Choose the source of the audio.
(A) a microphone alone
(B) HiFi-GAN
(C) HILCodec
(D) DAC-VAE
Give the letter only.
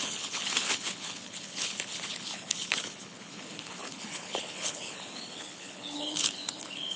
C